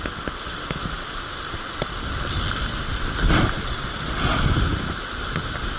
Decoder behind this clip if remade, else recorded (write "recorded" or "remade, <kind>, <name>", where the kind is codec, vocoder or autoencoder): recorded